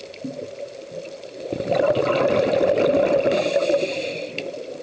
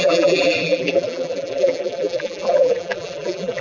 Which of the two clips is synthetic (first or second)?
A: second